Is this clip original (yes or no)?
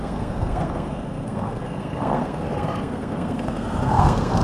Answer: no